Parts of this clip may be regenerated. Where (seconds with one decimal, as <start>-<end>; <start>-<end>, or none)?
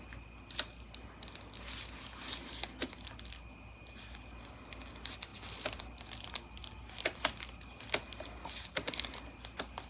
none